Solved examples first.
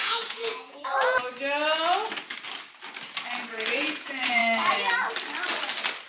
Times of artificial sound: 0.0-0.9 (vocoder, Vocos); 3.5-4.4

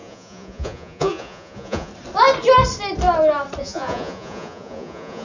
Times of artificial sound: 0.0-1.9 (vocoder, Vocos); 3.6-5.2